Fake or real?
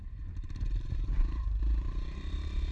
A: fake